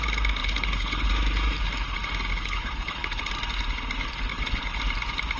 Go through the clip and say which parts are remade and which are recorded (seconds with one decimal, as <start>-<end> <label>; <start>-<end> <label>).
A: 0.0-0.4 recorded; 0.4-1.1 remade; 1.1-2.3 recorded; 2.3-3.3 remade; 3.3-4.3 recorded; 4.3-4.8 remade; 4.8-5.4 recorded